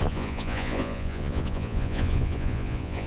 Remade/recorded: remade